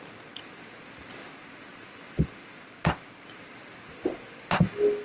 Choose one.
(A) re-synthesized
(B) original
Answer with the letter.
B